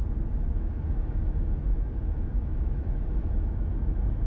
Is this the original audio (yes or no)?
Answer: no